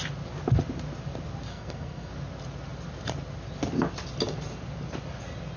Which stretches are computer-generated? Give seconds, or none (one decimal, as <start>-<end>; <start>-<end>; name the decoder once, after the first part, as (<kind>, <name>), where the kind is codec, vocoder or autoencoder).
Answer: 1.5-2.1 (codec, SNAC)